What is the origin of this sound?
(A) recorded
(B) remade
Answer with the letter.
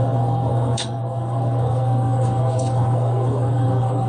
B